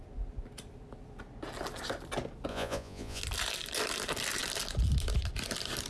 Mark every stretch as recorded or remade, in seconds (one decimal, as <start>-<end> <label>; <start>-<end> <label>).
0.0-2.5 recorded; 2.5-3.2 remade; 3.2-5.9 recorded